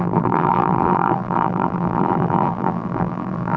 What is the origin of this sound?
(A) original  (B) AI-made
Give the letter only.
B